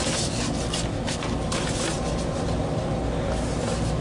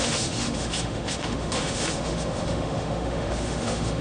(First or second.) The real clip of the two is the first